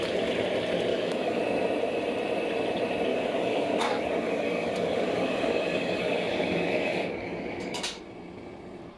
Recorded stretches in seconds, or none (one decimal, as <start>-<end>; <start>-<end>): 0.0-0.9; 1.4-3.1; 8.0-9.0

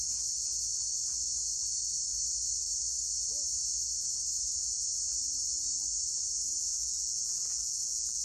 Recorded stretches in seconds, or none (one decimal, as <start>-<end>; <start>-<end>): 0.0-6.7

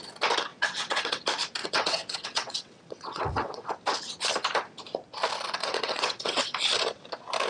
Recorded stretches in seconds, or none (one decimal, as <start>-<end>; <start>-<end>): 0.0-0.5; 1.2-1.6; 3.7-5.6; 6.6-7.5

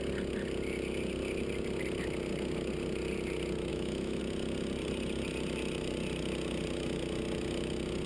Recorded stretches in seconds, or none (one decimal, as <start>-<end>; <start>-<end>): 0.0-3.7; 4.2-8.1